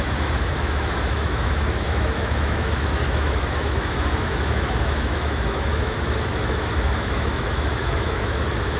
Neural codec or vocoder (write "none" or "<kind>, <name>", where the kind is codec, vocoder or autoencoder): autoencoder, DAC-VAE